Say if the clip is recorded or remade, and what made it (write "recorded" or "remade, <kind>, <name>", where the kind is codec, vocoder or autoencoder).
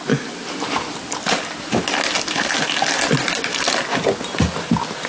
recorded